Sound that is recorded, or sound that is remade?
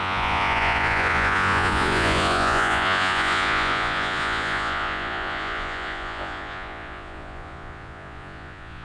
remade